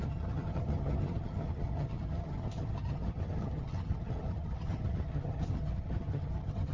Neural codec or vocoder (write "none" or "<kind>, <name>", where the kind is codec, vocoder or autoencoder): vocoder, HiFi-GAN